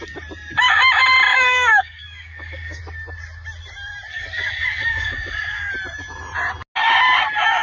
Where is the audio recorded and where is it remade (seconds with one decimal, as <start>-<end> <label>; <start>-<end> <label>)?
0.0-1.3 recorded; 1.3-2.8 remade; 2.8-4.1 recorded; 4.1-5.7 remade; 5.7-7.6 recorded